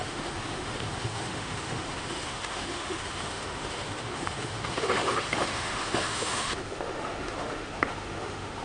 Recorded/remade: remade